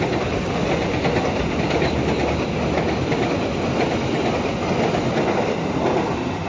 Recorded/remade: recorded